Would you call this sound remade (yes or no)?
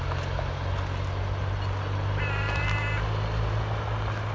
no